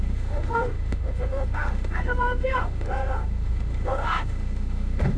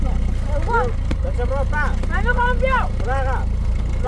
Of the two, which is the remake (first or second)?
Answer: first